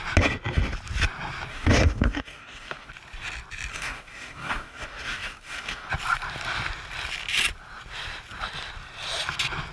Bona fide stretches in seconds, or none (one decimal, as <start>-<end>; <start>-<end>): 0.0-1.5; 2.9-3.7; 5.9-9.7